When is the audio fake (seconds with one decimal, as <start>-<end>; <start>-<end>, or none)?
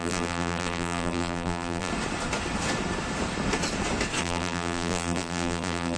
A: 0.0-1.9; 4.2-6.0